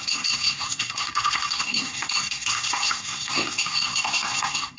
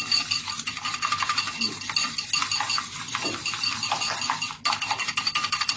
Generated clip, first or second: first